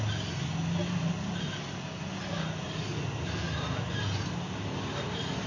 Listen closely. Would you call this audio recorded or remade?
recorded